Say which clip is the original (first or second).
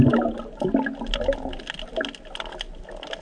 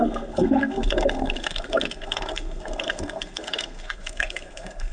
first